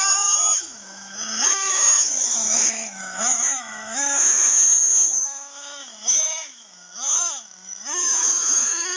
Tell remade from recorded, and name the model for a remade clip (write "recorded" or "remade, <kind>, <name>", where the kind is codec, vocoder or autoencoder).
remade, autoencoder, DAC-VAE